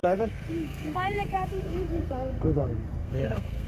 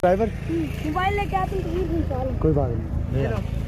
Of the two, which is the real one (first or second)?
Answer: second